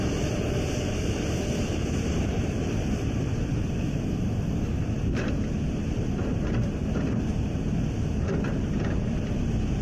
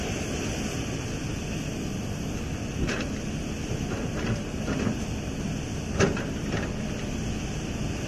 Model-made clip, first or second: first